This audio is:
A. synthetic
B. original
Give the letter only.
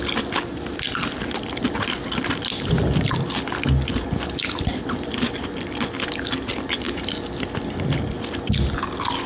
B